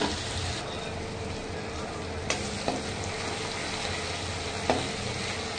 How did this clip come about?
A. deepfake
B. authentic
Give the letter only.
B